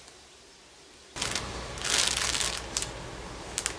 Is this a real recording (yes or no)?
yes